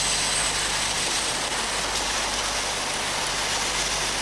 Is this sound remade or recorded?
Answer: recorded